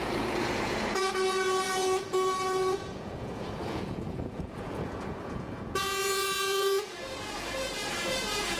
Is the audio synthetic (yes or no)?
yes